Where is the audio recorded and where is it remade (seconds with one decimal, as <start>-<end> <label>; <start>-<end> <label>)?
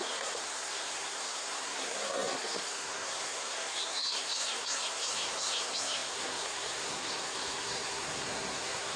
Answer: 0.0-9.0 remade